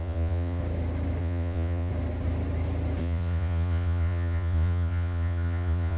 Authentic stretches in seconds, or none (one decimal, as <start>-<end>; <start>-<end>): 0.6-1.2; 1.9-3.0